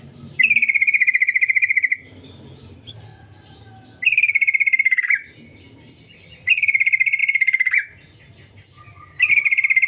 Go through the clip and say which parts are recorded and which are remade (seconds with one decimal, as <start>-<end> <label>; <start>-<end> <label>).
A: 0.0-9.9 recorded

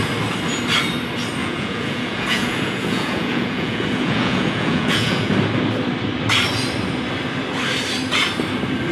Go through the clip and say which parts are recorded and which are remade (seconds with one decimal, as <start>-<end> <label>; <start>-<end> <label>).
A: 0.0-1.4 recorded; 1.4-5.3 remade; 5.3-8.9 recorded

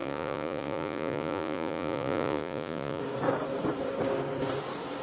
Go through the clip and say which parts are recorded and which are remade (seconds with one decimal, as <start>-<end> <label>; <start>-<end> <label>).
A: 0.0-3.0 remade; 3.0-5.0 recorded